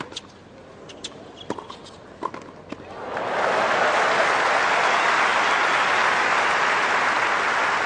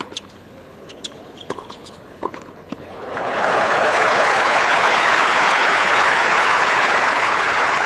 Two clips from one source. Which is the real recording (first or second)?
first